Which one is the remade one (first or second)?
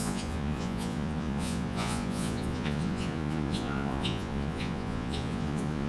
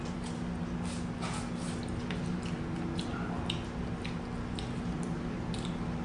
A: first